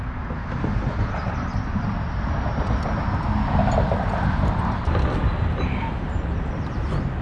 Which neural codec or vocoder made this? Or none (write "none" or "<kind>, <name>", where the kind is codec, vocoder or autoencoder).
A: none